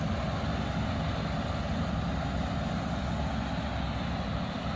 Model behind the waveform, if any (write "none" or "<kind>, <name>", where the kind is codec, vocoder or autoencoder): none